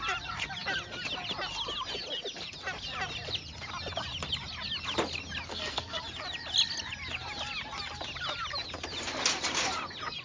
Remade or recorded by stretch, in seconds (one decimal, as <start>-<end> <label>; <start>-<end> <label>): 0.0-5.5 recorded; 5.5-6.0 remade; 6.0-10.2 recorded